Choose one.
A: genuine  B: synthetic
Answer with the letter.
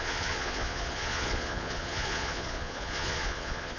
B